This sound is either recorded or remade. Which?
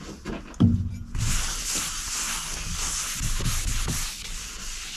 recorded